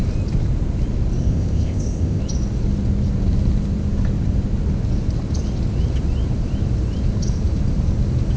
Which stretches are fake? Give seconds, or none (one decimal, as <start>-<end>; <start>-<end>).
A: 1.2-2.2